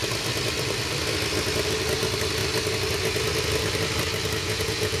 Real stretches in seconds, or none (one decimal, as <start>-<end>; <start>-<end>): 0.0-4.4